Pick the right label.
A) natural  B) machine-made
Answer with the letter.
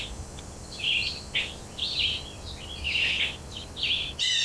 A